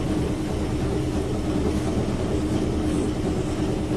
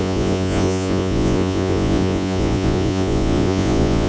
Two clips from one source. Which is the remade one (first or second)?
second